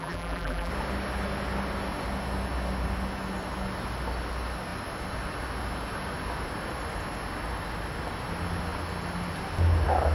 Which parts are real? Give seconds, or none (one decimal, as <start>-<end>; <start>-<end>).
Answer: 0.7-10.1